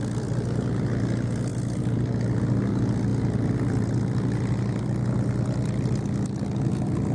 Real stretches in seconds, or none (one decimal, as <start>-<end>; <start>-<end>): 0.0-3.1; 4.8-7.1